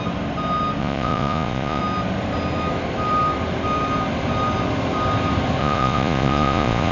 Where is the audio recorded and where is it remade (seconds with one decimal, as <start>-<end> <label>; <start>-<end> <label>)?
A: 0.0-0.8 recorded; 0.8-1.8 remade; 1.8-5.6 recorded; 5.6-6.9 remade